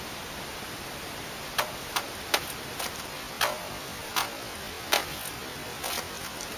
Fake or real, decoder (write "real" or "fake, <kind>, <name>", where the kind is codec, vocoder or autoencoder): real